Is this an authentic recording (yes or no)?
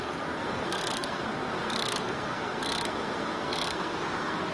no